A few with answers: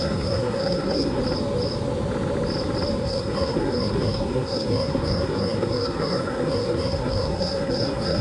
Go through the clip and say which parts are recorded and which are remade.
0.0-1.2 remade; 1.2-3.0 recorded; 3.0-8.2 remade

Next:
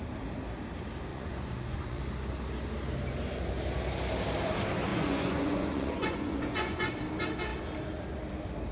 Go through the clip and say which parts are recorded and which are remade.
0.0-1.1 recorded; 1.1-2.0 remade; 2.0-4.9 recorded; 4.9-6.9 remade; 6.9-8.7 recorded

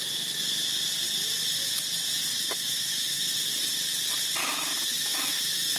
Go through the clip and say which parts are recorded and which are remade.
0.0-2.3 recorded; 2.3-3.3 remade; 3.3-4.4 recorded; 4.4-5.8 remade

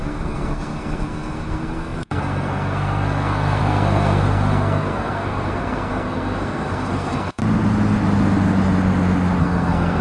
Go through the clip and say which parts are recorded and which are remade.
0.0-7.4 remade; 7.4-9.4 recorded; 9.4-10.0 remade

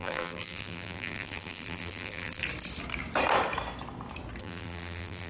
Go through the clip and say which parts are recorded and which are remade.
0.0-2.4 remade; 2.4-4.4 recorded; 4.4-5.3 remade

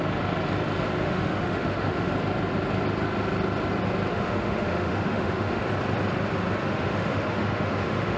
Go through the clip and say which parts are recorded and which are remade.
0.0-1.0 recorded; 1.0-2.1 remade; 2.1-4.1 recorded; 4.1-5.6 remade; 5.6-6.7 recorded; 6.7-8.2 remade